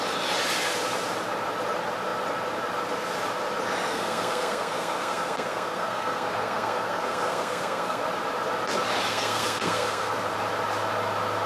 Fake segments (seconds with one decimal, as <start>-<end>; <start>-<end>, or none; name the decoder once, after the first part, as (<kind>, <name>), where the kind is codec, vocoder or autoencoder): 3.9-8.0 (codec, SNAC); 9.1-10.2